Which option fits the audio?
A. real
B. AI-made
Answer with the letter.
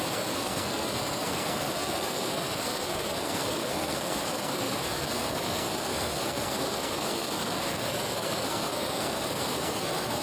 B